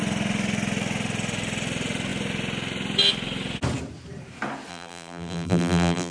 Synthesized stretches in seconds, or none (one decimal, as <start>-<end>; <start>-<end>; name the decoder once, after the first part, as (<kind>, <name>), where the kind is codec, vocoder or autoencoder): 4.7-6.1 (vocoder, BigVGAN v2)